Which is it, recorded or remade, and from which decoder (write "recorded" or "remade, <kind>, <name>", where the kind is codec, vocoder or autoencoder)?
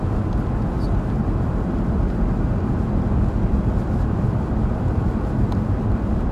recorded